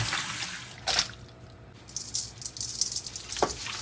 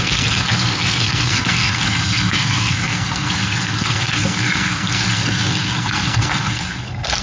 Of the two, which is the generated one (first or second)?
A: second